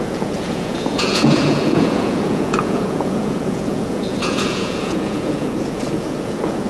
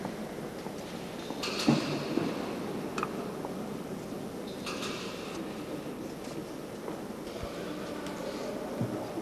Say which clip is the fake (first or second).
first